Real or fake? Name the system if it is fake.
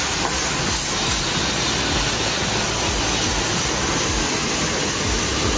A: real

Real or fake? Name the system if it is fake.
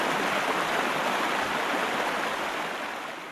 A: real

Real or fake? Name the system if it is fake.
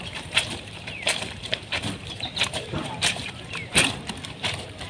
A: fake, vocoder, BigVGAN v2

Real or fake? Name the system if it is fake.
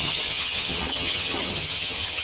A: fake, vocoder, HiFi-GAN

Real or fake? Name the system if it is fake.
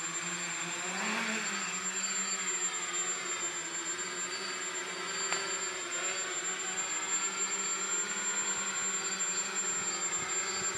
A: real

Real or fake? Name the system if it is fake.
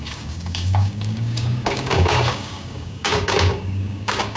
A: fake, codec, DAC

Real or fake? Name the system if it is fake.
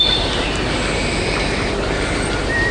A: real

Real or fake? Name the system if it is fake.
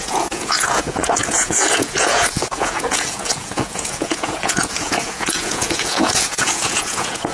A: fake, vocoder, Vocos